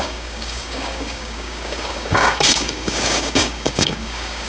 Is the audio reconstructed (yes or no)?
yes